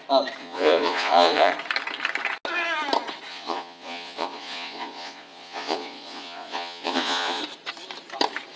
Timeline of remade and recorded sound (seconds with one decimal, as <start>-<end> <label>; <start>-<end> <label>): 0.0-0.4 recorded; 0.4-1.5 remade; 1.5-3.3 recorded; 3.3-7.4 remade; 7.4-8.6 recorded